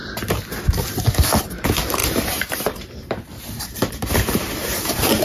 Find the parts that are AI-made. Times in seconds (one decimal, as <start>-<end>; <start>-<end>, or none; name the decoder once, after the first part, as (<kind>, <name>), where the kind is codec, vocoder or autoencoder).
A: 1.4-5.2 (vocoder, BigVGAN v2)